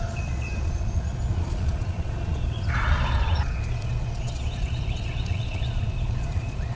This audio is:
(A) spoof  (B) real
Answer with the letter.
A